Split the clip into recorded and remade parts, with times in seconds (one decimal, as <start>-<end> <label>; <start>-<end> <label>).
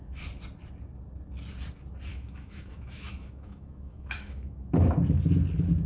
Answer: 0.0-2.1 recorded; 2.1-4.9 remade; 4.9-5.9 recorded